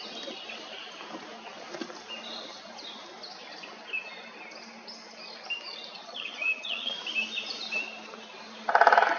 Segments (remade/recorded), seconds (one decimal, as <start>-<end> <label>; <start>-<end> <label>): 0.0-6.0 recorded; 6.0-6.9 remade; 6.9-9.2 recorded